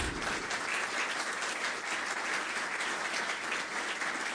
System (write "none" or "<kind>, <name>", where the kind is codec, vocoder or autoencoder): none